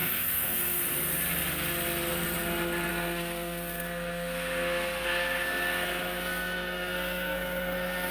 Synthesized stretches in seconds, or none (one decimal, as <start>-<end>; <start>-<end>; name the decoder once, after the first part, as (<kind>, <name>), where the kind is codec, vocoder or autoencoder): 0.0-0.8 (codec, SNAC); 2.9-8.1